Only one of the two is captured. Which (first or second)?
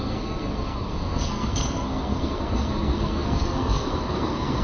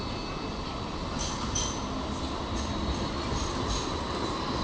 second